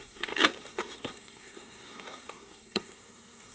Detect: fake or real fake